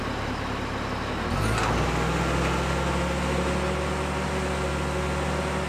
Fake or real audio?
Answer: real